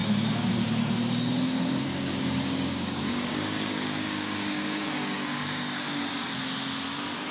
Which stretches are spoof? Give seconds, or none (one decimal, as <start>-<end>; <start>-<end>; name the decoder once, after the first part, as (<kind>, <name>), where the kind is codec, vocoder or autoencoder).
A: 1.9-6.3 (codec, DAC)